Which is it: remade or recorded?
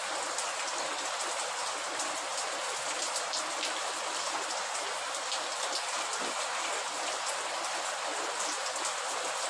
recorded